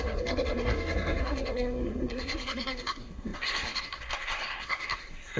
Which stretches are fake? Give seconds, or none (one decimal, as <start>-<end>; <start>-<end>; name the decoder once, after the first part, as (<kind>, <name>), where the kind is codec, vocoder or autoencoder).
0.0-5.4 (codec, SNAC)